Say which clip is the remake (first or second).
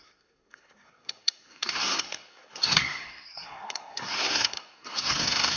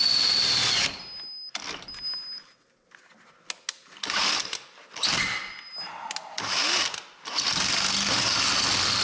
first